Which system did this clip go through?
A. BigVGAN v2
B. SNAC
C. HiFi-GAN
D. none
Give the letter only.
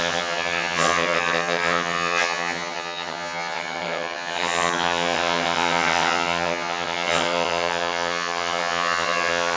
C